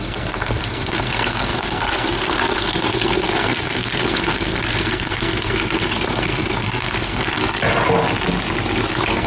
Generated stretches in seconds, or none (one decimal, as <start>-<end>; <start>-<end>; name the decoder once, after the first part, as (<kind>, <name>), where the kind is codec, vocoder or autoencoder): 0.0-7.4 (codec, SNAC); 8.9-9.3